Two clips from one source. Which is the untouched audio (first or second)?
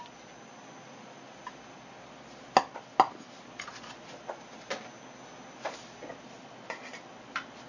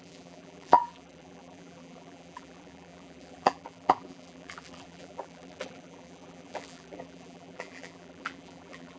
first